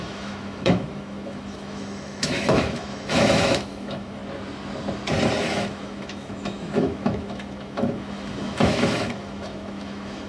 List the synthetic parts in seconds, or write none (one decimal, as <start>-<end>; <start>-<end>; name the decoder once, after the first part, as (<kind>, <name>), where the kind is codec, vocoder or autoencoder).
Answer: 0.0-4.2 (autoencoder, DAC-VAE); 5.4-10.3